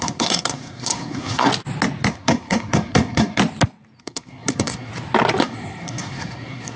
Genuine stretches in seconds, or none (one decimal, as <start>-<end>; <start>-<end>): 1.5-2.1; 3.4-4.0; 4.9-5.4

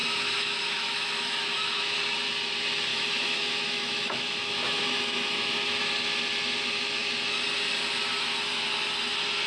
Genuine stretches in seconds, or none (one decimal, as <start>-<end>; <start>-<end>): 2.0-2.9; 5.8-9.5

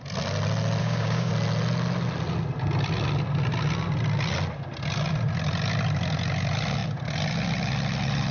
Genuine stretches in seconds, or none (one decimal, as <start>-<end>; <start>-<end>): 0.0-0.8; 1.3-8.3

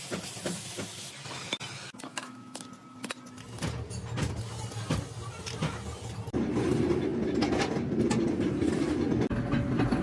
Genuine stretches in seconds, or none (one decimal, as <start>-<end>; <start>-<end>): 0.0-2.1; 2.7-10.0